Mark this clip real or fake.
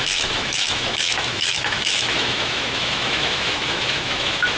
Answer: fake